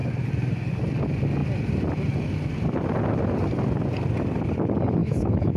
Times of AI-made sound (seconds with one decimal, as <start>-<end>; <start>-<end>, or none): 5.0-5.6